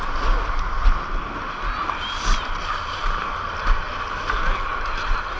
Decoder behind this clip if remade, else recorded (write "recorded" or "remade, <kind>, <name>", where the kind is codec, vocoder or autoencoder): recorded